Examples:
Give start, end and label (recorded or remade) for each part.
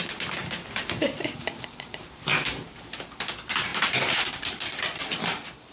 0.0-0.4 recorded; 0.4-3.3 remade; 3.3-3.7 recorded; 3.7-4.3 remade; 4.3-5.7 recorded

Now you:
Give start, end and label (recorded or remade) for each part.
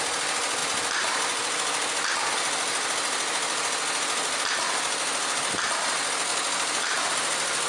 0.0-6.3 recorded; 6.3-7.1 remade; 7.1-7.7 recorded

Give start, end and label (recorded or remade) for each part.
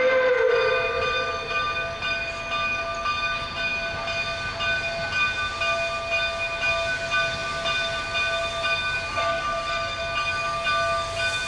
0.0-9.1 recorded; 9.1-10.0 remade; 10.0-11.5 recorded